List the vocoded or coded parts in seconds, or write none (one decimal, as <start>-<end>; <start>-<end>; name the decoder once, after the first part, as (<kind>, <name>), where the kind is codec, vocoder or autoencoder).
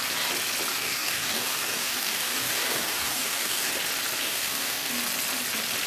0.7-3.7 (codec, DAC); 4.2-4.9